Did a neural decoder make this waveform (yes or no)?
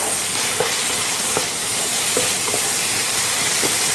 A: yes